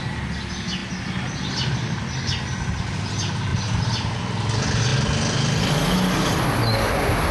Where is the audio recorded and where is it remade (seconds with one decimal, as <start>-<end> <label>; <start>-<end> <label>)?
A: 0.0-3.5 recorded; 3.5-4.2 remade; 4.2-7.3 recorded